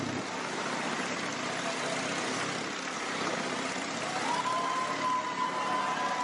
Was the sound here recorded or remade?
recorded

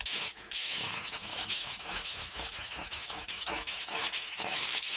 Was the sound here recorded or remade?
remade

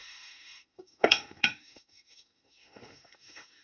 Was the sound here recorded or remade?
remade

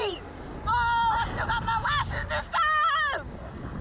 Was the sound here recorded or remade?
recorded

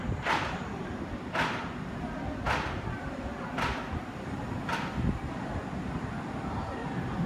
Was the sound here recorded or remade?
recorded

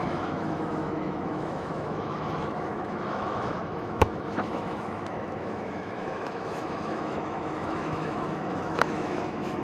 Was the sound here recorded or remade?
remade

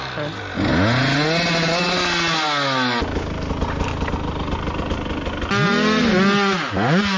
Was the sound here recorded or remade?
recorded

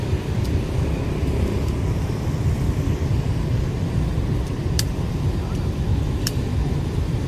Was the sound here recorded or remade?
recorded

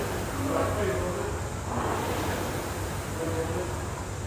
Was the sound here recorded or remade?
recorded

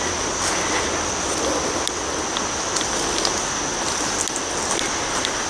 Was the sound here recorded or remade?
recorded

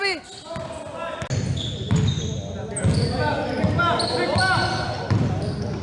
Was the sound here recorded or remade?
recorded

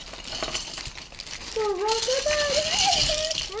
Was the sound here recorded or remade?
recorded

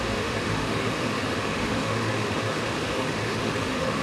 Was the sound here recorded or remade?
remade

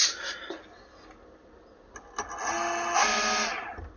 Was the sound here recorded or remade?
recorded